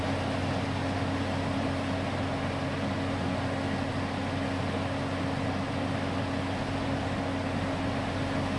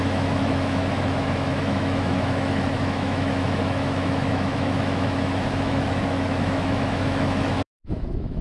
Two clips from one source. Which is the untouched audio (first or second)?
first